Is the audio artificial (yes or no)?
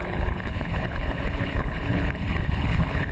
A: yes